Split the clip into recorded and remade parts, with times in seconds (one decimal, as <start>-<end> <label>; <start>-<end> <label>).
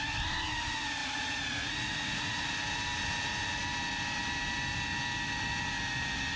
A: 0.0-1.0 recorded; 1.0-2.5 remade; 2.5-6.4 recorded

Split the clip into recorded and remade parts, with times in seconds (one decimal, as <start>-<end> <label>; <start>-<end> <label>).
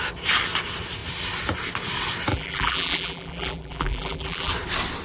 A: 0.0-2.3 recorded; 2.3-4.5 remade; 4.5-5.0 recorded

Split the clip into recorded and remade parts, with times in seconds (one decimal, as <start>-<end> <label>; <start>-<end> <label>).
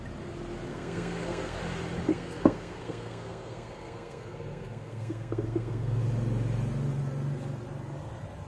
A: 0.0-0.7 recorded; 0.7-1.6 remade; 1.6-2.1 recorded; 2.1-6.0 remade; 6.0-8.5 recorded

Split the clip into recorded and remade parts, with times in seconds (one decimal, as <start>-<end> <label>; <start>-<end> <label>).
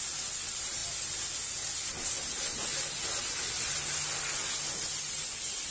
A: 0.0-5.7 recorded